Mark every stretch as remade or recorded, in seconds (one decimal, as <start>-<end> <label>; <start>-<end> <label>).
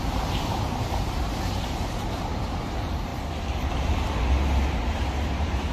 0.0-3.1 remade; 3.1-4.7 recorded; 4.7-5.7 remade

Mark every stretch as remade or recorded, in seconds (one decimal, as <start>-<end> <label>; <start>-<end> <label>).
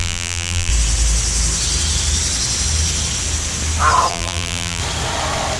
0.0-0.7 remade; 0.7-4.1 recorded; 4.1-4.8 remade; 4.8-5.6 recorded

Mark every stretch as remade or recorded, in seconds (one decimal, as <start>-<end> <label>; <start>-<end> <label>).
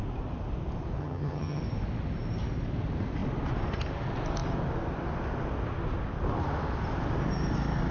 0.0-1.0 recorded; 1.0-1.6 remade; 1.6-7.9 recorded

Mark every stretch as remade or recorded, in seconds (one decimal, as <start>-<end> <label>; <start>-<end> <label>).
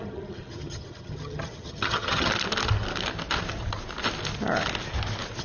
0.0-2.3 remade; 2.3-5.4 recorded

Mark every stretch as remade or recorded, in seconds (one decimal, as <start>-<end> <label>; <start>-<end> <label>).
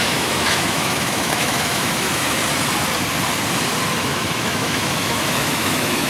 0.0-2.4 remade; 2.4-4.0 recorded; 4.0-6.1 remade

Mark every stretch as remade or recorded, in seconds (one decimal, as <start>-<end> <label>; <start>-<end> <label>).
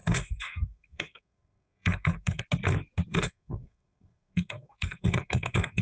0.0-2.4 remade; 2.4-3.1 recorded; 3.1-5.8 remade